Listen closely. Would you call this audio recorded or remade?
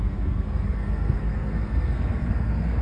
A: remade